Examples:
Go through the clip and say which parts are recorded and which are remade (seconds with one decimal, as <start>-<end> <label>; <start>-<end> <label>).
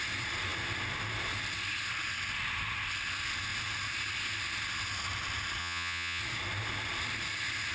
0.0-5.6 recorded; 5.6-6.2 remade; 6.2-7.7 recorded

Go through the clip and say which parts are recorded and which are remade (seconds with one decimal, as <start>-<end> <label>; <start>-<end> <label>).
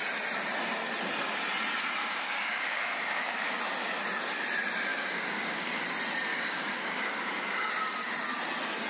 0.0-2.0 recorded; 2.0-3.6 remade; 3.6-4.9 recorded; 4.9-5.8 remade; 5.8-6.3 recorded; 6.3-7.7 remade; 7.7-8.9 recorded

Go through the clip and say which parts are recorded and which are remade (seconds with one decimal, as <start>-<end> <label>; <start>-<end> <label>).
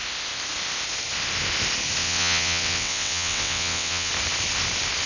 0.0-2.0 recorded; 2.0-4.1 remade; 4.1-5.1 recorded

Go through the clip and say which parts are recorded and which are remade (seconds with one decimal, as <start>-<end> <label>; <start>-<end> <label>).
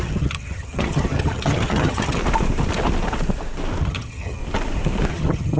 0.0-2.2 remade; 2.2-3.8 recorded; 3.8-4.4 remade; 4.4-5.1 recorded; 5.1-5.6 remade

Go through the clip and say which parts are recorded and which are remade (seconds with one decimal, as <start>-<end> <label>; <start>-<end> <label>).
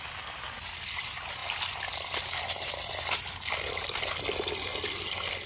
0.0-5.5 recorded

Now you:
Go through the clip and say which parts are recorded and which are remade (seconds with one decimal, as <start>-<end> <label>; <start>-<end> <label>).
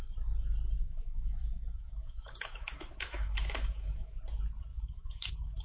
0.0-0.8 recorded; 0.8-4.2 remade; 4.2-4.7 recorded; 4.7-5.6 remade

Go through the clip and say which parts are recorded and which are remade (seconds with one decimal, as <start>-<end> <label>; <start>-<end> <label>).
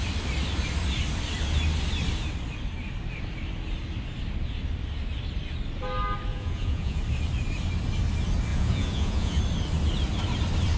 0.0-6.3 recorded; 6.3-7.0 remade; 7.0-8.5 recorded; 8.5-9.4 remade; 9.4-10.8 recorded